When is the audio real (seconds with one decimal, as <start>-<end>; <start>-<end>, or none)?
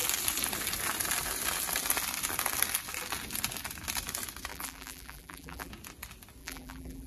0.0-4.5; 5.7-6.4